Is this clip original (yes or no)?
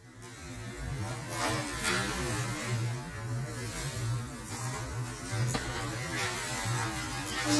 yes